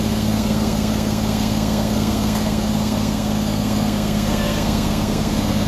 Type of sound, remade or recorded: remade